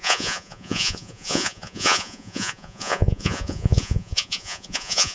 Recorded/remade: remade